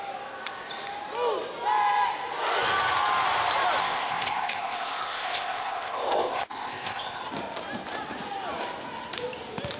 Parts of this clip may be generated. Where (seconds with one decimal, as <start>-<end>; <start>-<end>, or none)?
3.8-7.2